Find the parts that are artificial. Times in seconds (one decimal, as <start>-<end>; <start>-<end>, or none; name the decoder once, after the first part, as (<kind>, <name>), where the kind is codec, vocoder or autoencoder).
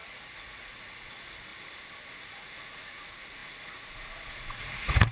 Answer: 0.0-1.5 (vocoder, Vocos); 2.0-5.1